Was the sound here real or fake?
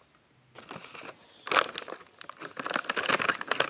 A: real